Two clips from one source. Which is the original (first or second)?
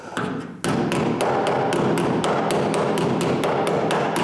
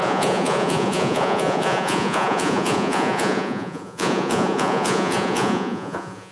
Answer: first